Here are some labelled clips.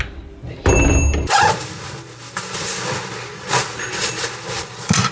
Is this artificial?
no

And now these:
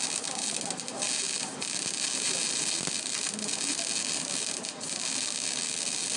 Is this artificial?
no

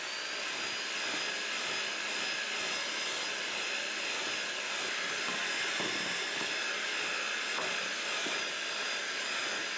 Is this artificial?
no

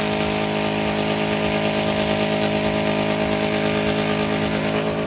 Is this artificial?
no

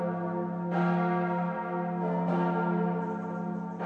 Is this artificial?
no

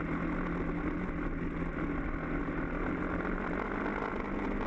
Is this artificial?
no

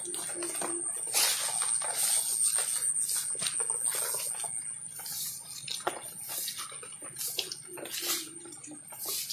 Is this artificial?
no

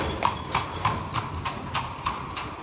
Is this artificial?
yes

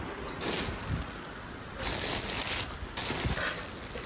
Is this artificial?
no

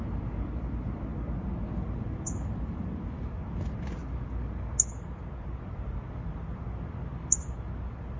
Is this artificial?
no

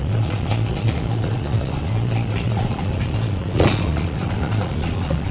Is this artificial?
yes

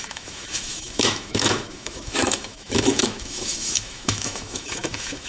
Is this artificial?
yes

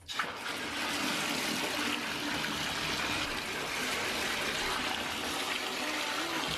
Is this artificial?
no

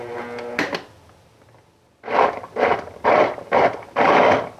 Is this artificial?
no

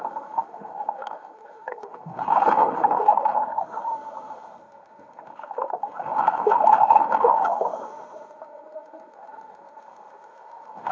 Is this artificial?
yes